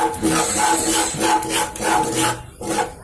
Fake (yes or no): no